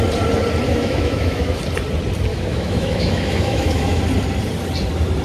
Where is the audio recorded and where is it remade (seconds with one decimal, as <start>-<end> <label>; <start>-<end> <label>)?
0.0-0.7 recorded; 0.7-1.6 remade; 1.6-2.3 recorded; 2.3-4.0 remade; 4.0-5.2 recorded